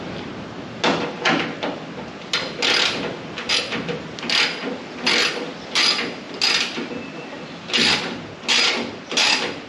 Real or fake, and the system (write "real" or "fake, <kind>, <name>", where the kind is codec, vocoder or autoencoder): real